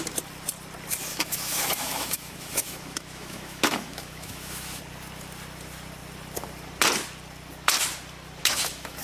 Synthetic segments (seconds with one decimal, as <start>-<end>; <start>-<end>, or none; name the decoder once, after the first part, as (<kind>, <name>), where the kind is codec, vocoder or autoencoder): 1.1-4.8 (autoencoder, DAC-VAE); 8.4-9.0